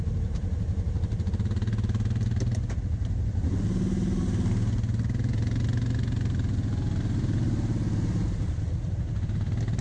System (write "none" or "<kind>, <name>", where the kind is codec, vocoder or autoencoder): none